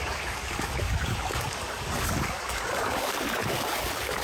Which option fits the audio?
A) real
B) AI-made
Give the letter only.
B